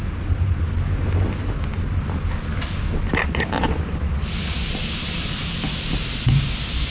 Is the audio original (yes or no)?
yes